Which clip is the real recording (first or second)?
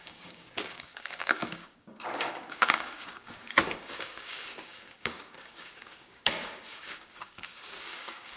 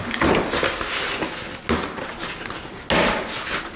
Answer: second